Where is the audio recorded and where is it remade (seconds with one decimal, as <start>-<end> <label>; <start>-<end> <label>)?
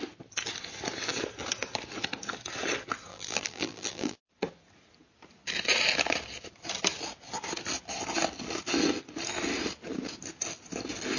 0.0-3.1 recorded; 3.1-4.3 remade; 4.3-11.2 recorded